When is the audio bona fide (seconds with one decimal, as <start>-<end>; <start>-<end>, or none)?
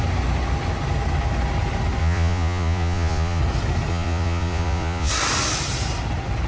0.0-2.0; 3.4-3.9; 5.1-6.5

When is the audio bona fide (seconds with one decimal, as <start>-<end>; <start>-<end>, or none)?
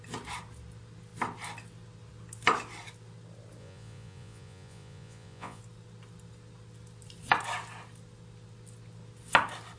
0.0-3.6; 5.6-9.8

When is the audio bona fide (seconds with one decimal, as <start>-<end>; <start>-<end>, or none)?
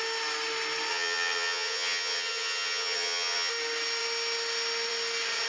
0.0-0.9; 3.5-5.5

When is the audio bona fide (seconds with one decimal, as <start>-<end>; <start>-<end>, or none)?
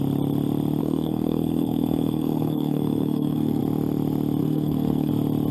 0.0-0.8; 3.6-4.4; 5.1-5.5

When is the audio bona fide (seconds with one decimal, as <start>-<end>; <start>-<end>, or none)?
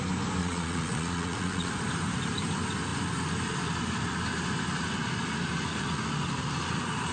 0.0-0.4; 1.7-7.1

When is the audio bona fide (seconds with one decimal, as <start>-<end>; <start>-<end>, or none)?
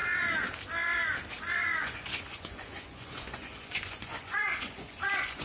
0.0-1.6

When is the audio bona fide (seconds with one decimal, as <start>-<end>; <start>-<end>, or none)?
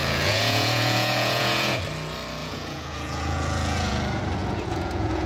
1.8-2.4; 4.0-4.4